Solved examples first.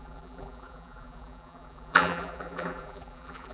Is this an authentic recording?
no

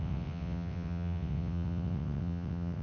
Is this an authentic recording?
no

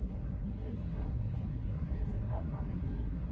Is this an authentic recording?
no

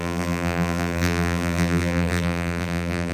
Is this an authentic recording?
no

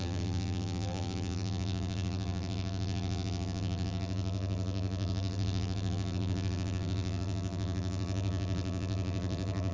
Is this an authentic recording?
no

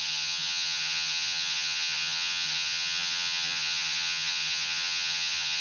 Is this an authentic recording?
no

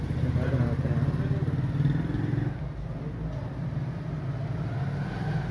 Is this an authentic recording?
yes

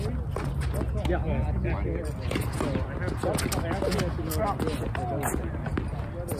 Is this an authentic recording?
yes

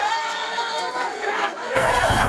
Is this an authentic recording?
no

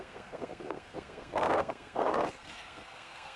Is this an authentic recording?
no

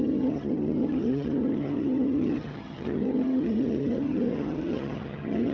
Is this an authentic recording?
no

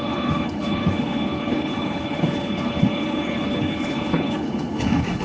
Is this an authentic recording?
no